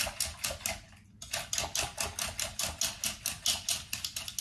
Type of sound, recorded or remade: recorded